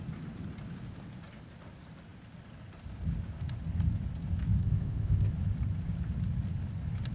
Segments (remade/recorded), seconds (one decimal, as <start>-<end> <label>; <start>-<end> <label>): 0.0-4.6 recorded; 4.6-5.3 remade; 5.3-7.1 recorded